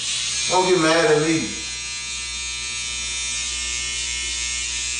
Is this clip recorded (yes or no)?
yes